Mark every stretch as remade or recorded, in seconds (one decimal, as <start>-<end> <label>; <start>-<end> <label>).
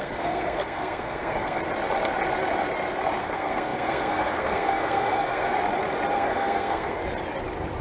0.0-1.6 remade; 1.6-3.2 recorded; 3.2-5.6 remade; 5.6-6.1 recorded; 6.1-7.0 remade; 7.0-7.8 recorded